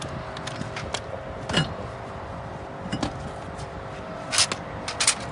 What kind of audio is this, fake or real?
real